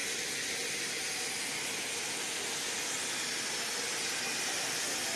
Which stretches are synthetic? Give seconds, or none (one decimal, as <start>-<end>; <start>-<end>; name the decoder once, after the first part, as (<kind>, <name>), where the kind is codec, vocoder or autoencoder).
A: none